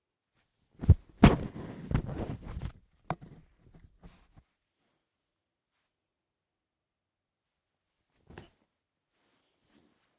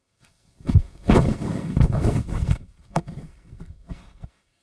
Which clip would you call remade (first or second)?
second